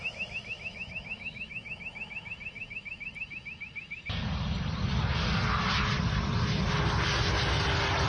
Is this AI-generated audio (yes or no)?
no